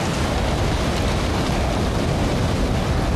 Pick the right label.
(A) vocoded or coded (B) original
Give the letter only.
B